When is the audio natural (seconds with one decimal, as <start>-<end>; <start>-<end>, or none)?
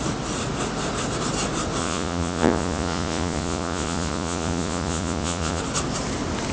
0.0-1.8; 5.6-6.5